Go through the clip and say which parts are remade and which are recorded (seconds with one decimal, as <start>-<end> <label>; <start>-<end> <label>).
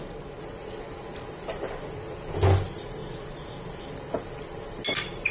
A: 0.0-5.3 recorded